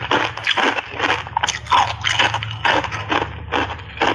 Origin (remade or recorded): recorded